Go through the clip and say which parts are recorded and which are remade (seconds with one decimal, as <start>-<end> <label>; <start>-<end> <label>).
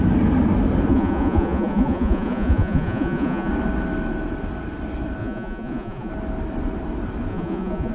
0.0-0.9 recorded; 0.9-3.5 remade; 3.5-5.2 recorded; 5.2-6.1 remade; 6.1-7.3 recorded; 7.3-7.9 remade